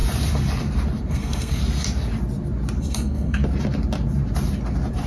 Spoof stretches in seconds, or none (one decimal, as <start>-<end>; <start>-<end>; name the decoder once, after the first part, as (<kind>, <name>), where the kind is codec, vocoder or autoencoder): 1.1-1.6 (codec, SNAC); 2.8-3.4